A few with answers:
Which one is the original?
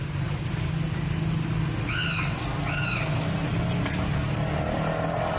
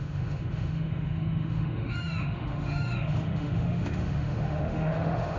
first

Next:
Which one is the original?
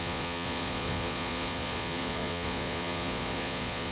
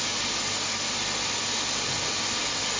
second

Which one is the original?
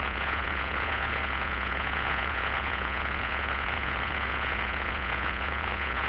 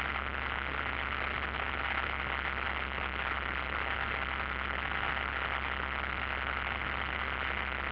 second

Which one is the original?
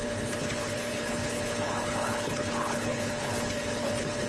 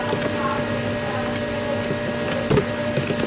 second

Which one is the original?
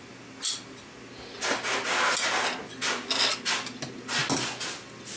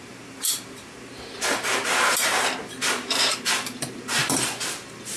first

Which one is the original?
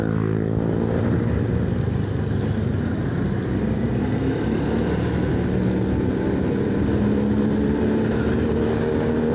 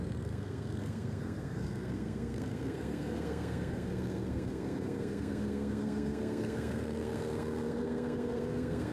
first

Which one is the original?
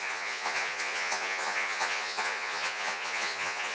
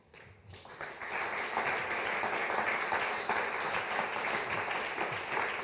second